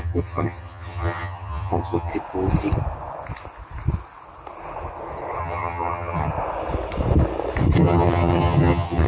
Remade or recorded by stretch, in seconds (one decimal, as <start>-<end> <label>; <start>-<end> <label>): 0.0-2.1 remade; 2.1-5.4 recorded; 5.4-6.3 remade; 6.3-7.8 recorded; 7.8-9.1 remade